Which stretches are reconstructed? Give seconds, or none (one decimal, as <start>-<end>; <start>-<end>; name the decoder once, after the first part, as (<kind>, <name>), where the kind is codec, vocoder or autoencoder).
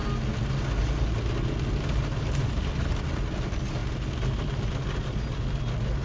none